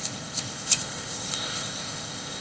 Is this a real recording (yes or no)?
no